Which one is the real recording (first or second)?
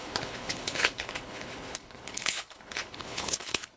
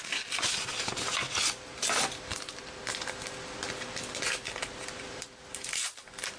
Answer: second